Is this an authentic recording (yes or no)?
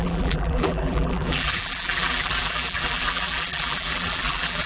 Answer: no